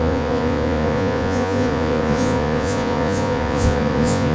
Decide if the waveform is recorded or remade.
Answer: remade